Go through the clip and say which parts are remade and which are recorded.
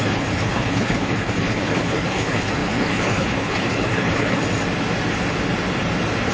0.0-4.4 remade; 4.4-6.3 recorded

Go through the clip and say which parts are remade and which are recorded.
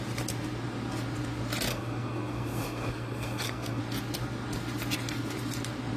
0.0-1.7 recorded; 1.7-3.8 remade; 3.8-6.0 recorded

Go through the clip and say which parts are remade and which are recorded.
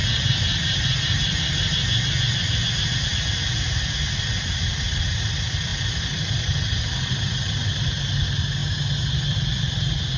0.0-1.7 remade; 1.7-3.1 recorded; 3.1-5.0 remade; 5.0-5.7 recorded; 5.7-8.0 remade; 8.0-10.2 recorded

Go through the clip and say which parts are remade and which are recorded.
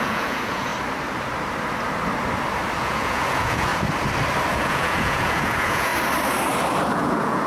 0.0-0.7 remade; 0.7-2.8 recorded; 2.8-3.7 remade; 3.7-4.5 recorded; 4.5-5.9 remade; 5.9-6.9 recorded; 6.9-7.5 remade